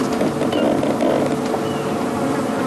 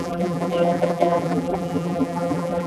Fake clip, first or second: second